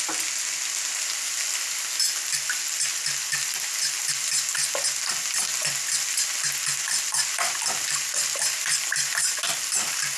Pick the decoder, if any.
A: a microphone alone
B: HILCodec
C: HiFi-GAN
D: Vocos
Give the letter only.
A